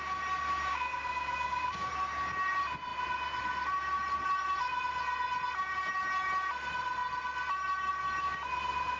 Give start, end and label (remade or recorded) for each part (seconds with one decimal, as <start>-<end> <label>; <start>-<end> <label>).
0.0-0.7 recorded; 0.7-1.9 remade; 1.9-9.0 recorded